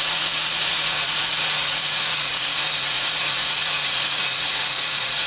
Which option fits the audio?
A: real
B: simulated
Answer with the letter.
B